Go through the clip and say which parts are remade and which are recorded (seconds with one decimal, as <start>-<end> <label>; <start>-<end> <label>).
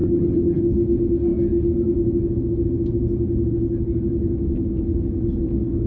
0.0-0.6 remade; 0.6-5.9 recorded